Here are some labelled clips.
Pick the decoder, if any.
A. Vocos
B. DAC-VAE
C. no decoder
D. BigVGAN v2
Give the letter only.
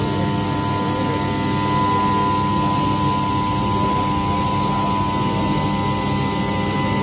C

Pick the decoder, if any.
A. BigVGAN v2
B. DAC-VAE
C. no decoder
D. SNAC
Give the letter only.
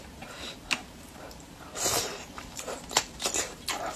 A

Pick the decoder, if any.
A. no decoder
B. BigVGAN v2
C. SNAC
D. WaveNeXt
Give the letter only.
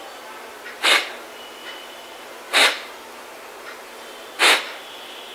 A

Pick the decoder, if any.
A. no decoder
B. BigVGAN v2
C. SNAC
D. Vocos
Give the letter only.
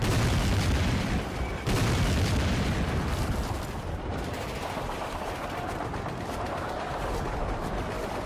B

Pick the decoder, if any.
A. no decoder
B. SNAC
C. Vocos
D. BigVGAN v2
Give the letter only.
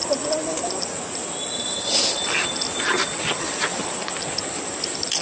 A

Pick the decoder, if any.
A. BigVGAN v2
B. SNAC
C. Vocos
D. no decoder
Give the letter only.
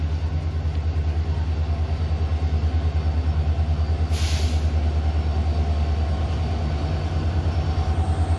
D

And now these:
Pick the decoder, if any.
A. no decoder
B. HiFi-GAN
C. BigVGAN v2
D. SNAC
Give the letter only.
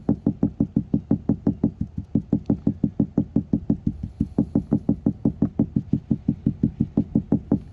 A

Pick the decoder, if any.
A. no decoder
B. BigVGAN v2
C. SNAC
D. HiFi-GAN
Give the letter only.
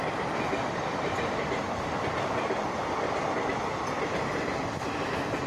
A